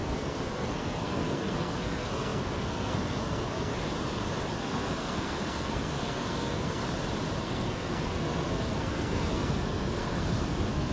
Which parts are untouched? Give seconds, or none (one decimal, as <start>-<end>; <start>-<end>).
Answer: 3.7-4.6; 6.8-7.4